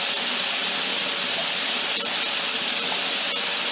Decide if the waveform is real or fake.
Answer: fake